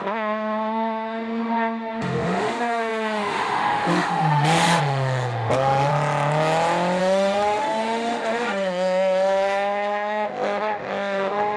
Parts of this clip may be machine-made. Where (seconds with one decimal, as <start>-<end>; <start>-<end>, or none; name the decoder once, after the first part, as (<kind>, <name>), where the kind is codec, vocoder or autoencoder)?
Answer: 0.0-5.9 (autoencoder, DAC-VAE); 7.0-11.6